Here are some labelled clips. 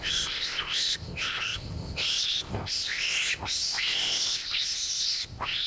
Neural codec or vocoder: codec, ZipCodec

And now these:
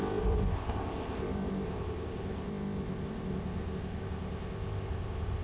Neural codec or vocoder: codec, ZipCodec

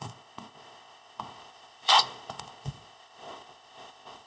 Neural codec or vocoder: codec, ZipCodec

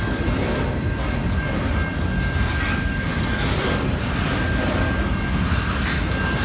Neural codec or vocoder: none